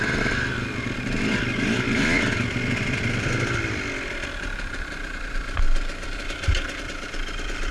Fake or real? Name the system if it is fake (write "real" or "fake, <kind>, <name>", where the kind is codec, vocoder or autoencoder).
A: fake, vocoder, BigVGAN v2